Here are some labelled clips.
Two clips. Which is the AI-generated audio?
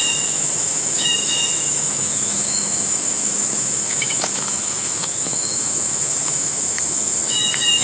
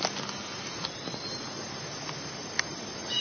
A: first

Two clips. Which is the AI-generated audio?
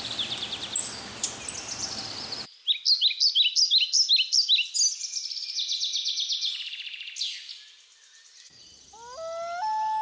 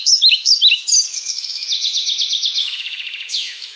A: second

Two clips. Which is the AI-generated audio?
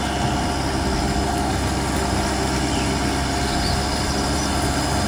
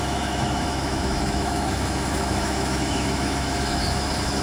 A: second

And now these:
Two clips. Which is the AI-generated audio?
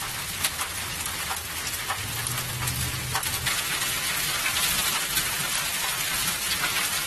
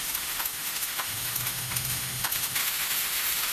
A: second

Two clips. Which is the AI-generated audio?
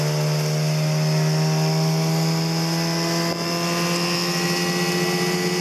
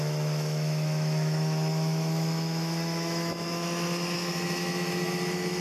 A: second